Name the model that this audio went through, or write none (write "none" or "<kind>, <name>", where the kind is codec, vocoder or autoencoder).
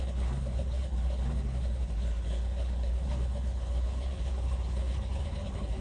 codec, HILCodec